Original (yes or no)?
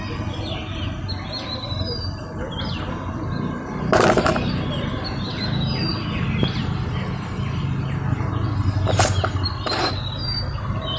yes